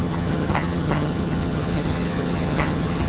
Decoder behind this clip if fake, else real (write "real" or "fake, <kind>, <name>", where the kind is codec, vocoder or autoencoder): fake, vocoder, HiFi-GAN